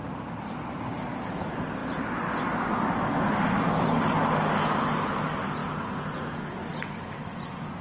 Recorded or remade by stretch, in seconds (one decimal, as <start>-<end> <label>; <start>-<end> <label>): 0.0-1.1 remade; 1.1-7.8 recorded